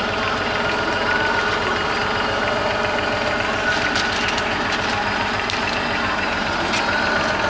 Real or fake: fake